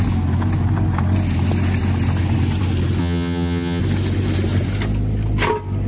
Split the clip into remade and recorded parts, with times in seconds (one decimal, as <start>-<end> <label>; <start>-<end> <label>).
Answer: 0.0-3.0 recorded; 3.0-3.8 remade; 3.8-5.9 recorded

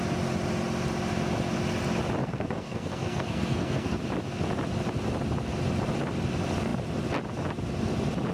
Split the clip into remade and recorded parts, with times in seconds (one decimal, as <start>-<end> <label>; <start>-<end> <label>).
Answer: 0.0-2.2 recorded; 2.2-4.0 remade; 4.0-8.3 recorded

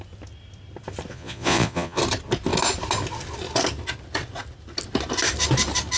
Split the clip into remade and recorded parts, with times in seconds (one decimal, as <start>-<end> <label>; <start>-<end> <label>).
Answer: 0.0-1.1 recorded; 1.1-2.0 remade; 2.0-6.0 recorded

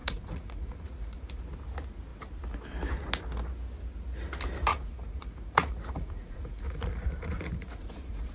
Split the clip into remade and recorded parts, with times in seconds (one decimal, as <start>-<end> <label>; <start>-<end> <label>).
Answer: 0.0-1.4 remade; 1.4-4.7 recorded; 4.7-8.3 remade

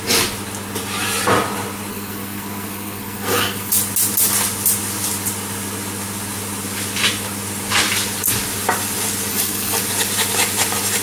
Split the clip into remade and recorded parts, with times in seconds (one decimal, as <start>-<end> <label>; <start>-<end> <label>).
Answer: 0.0-1.9 recorded; 1.9-3.7 remade; 3.7-9.3 recorded; 9.3-9.8 remade; 9.8-11.0 recorded